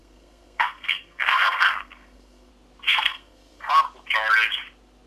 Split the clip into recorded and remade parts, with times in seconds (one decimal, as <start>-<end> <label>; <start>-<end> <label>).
0.0-2.5 remade; 2.5-2.9 recorded; 2.9-3.7 remade; 3.7-5.1 recorded